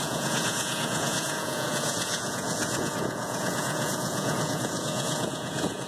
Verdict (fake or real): fake